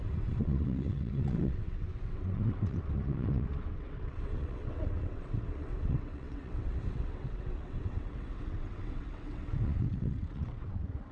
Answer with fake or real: fake